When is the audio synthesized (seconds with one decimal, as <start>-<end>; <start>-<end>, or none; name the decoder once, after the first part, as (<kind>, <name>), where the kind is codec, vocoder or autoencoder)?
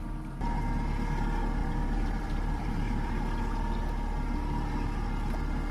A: 1.6-3.1 (vocoder, BigVGAN v2)